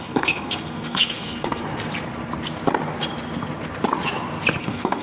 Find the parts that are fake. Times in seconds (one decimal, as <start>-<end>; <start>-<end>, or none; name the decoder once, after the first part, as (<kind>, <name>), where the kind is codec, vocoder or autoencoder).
0.0-1.6 (codec, SNAC); 4.6-5.0